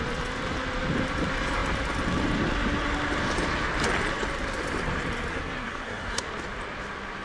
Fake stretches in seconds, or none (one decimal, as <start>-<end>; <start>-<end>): 5.3-6.2